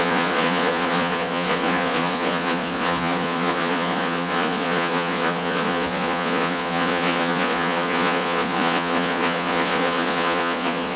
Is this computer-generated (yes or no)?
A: yes